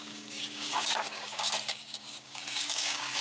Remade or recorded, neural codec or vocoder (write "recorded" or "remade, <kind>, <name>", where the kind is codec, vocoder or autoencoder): remade, codec, DAC